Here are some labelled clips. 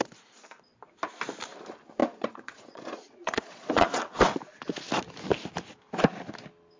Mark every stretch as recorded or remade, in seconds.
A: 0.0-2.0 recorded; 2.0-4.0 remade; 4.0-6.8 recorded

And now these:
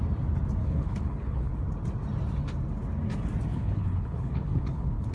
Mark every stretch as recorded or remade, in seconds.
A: 0.0-0.6 recorded; 0.6-1.5 remade; 1.5-3.5 recorded; 3.5-5.1 remade

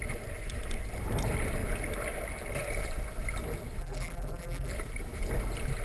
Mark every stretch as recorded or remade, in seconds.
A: 0.0-3.8 recorded; 3.8-4.7 remade; 4.7-5.8 recorded

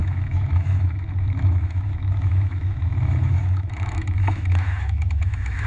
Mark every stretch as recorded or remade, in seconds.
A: 0.0-5.7 remade